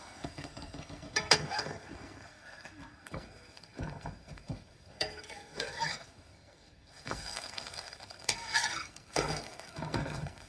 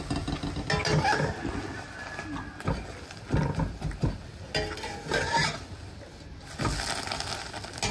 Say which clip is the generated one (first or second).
first